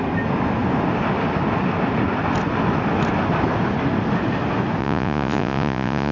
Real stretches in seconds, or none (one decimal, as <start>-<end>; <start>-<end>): 0.0-4.8